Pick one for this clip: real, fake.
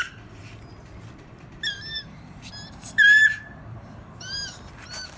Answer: fake